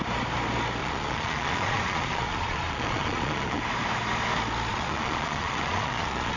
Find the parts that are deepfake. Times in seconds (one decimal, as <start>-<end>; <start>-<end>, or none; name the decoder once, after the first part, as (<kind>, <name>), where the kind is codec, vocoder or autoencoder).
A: 0.8-3.6 (vocoder, Vocos); 4.7-6.4